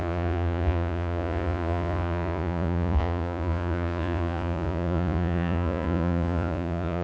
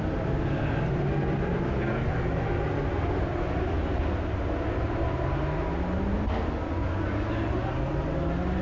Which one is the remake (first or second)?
first